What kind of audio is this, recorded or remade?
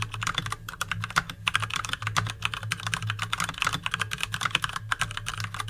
recorded